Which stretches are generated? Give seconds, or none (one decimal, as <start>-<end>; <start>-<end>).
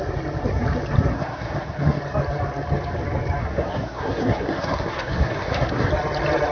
1.1-2.0; 3.4-5.9